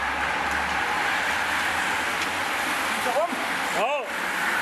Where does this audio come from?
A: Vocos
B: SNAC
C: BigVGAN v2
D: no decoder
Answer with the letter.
D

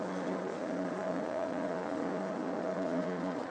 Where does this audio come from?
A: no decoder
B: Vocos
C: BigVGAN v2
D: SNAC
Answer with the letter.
B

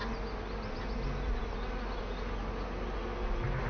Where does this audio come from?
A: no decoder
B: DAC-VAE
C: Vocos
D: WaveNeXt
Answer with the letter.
A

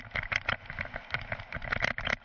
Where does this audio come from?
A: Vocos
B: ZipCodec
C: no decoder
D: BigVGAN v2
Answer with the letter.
C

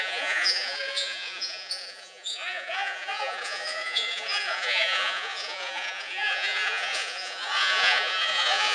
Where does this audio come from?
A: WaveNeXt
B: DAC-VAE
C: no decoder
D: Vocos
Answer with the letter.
D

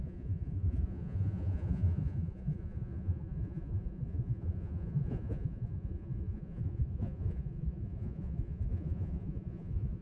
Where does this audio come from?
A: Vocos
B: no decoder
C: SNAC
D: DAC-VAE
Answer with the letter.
A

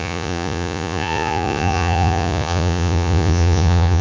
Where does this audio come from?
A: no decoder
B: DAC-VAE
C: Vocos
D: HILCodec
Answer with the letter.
C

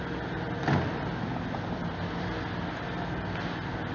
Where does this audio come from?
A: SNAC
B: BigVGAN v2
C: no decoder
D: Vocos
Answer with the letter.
C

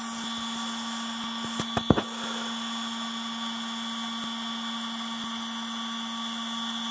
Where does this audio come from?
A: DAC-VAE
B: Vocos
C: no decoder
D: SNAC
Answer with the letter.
C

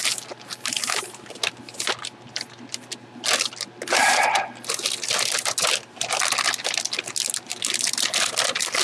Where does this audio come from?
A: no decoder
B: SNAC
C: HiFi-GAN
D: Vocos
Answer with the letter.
A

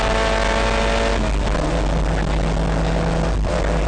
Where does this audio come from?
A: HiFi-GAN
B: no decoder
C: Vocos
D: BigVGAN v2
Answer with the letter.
B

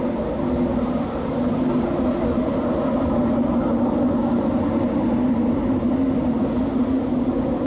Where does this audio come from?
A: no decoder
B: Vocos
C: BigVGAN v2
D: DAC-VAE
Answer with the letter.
A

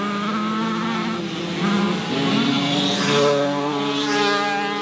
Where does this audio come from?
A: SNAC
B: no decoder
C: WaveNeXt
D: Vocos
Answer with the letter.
B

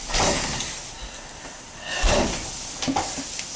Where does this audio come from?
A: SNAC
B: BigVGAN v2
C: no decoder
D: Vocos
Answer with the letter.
C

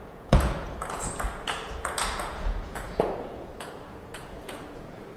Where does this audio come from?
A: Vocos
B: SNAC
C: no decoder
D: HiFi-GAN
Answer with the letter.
A